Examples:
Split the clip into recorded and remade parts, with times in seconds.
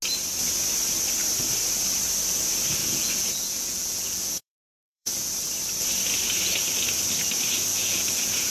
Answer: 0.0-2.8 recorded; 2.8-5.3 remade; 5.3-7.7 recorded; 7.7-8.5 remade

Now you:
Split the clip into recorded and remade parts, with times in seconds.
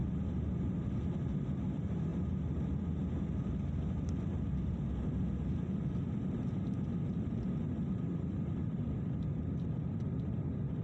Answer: 0.0-10.8 recorded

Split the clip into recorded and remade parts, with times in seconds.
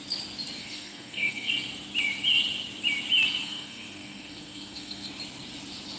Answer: 0.0-0.6 recorded; 0.6-1.5 remade; 1.5-3.4 recorded; 3.4-5.1 remade; 5.1-6.0 recorded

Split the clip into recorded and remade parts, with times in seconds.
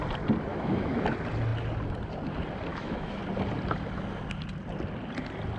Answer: 0.0-0.5 recorded; 0.5-1.0 remade; 1.0-2.7 recorded; 2.7-3.2 remade; 3.2-5.6 recorded